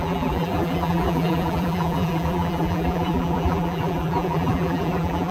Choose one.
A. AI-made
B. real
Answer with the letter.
A